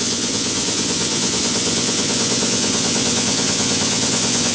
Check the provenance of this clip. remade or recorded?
remade